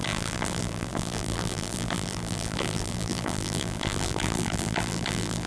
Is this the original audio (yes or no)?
no